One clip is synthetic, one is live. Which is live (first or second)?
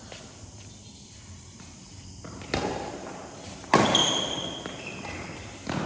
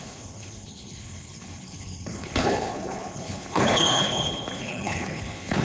first